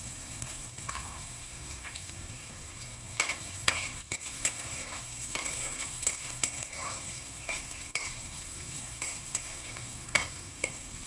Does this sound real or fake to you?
fake